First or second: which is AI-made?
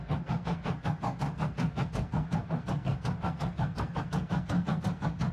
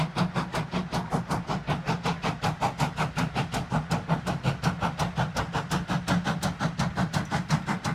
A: first